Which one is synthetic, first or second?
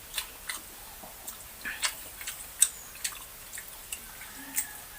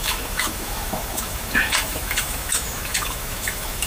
second